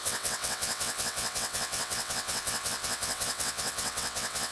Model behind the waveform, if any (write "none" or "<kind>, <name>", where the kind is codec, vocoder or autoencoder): vocoder, WaveNeXt